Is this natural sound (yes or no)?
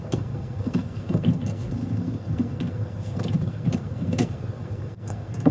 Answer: no